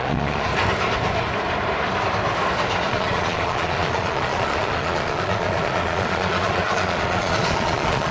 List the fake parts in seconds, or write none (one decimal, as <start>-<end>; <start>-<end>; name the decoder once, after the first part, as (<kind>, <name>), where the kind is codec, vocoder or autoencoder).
0.0-0.5 (vocoder, Vocos); 2.9-8.1